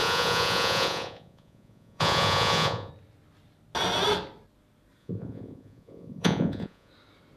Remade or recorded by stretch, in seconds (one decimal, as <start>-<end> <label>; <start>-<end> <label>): 0.0-2.9 remade; 2.9-5.0 recorded; 5.0-6.9 remade; 6.9-7.4 recorded